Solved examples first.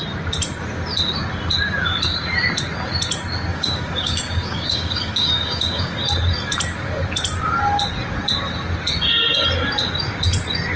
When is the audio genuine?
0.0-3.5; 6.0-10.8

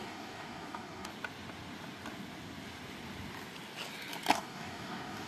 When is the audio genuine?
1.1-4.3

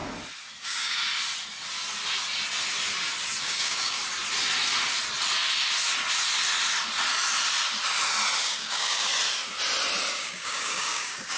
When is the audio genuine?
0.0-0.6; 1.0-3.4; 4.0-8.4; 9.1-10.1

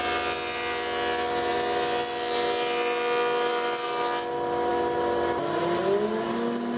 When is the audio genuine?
0.0-6.8

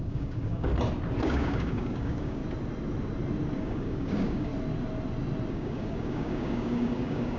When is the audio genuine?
0.7-1.2; 2.4-3.6; 4.5-5.5